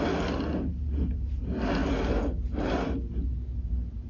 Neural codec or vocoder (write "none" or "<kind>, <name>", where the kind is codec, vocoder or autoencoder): none